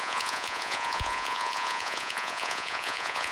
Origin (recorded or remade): remade